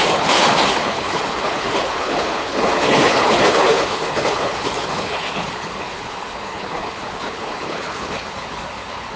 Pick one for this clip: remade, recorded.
remade